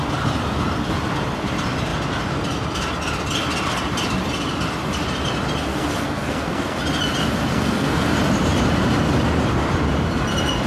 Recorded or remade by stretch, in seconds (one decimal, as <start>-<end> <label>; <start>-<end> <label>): 0.0-5.7 recorded; 5.7-6.8 remade; 6.8-7.5 recorded; 7.5-8.1 remade; 8.1-10.7 recorded